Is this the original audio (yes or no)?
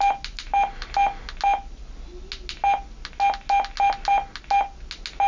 yes